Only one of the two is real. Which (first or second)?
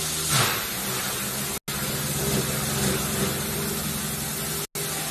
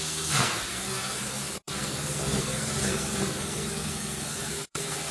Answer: first